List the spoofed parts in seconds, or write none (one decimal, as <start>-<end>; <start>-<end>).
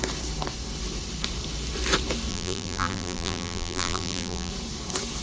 2.3-4.5